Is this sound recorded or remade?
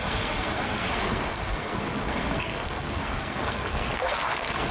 remade